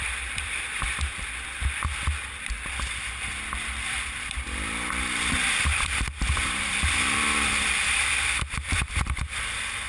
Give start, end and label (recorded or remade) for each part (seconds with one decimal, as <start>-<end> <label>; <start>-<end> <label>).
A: 0.0-1.1 remade; 1.1-3.6 recorded; 3.6-9.9 remade